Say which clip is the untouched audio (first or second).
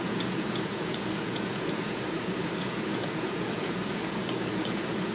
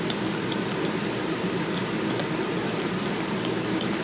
second